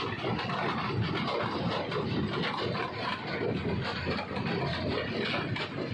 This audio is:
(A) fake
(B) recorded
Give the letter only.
B